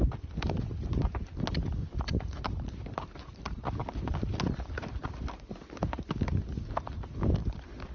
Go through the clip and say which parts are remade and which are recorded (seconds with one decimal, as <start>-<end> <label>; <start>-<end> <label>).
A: 0.0-1.8 recorded; 1.8-2.4 remade; 2.4-7.9 recorded